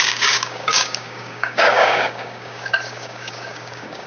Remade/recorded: remade